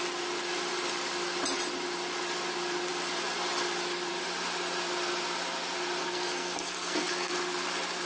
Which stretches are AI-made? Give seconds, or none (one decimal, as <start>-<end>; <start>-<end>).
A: 6.0-7.3